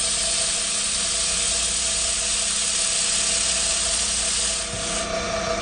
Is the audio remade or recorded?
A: recorded